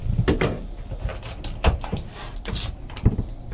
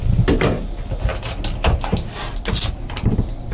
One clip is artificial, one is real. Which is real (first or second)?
second